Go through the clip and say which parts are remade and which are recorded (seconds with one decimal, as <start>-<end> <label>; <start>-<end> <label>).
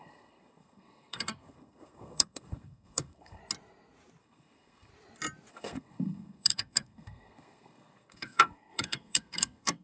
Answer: 0.0-3.4 remade; 3.4-4.2 recorded; 4.2-4.9 remade; 4.9-5.5 recorded; 5.5-9.8 remade